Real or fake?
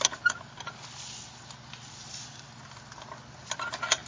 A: real